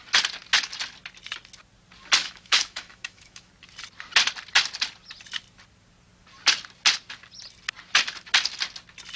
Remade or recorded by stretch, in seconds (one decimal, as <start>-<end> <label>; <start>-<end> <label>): 0.0-2.2 recorded; 2.2-3.5 remade; 3.5-9.2 recorded